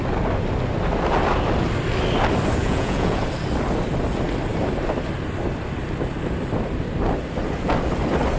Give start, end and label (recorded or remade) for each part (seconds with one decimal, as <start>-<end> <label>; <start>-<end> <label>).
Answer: 0.0-2.6 recorded; 2.6-3.2 remade; 3.2-8.4 recorded